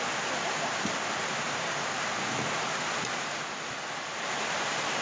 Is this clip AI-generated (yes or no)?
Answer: no